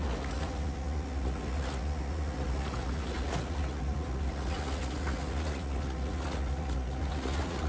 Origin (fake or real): fake